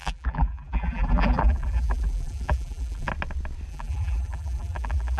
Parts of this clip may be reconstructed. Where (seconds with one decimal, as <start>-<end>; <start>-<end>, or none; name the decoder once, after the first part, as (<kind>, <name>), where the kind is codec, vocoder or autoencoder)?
0.0-3.1 (vocoder, BigVGAN v2); 3.7-5.2